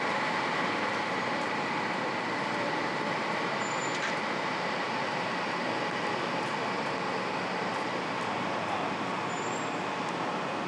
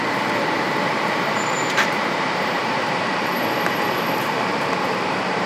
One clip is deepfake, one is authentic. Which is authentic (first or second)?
first